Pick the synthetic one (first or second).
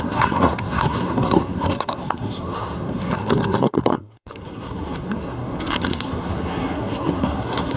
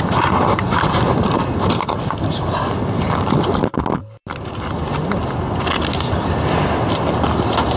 first